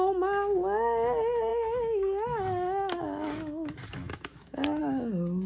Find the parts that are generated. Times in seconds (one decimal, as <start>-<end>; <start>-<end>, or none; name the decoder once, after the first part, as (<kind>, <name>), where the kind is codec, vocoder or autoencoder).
1.5-4.8 (autoencoder, DAC-VAE)